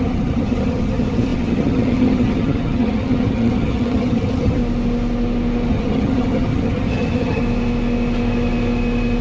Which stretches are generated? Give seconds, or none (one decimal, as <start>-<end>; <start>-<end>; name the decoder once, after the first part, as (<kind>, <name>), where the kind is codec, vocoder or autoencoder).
0.0-4.6 (vocoder, HiFi-GAN); 5.7-7.4